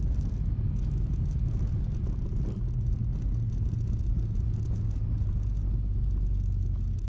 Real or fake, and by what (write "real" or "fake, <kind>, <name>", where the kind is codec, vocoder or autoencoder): real